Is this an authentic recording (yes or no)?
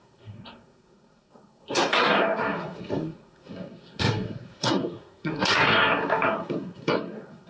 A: no